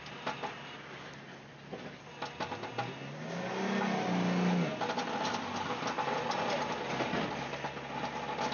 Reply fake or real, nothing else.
real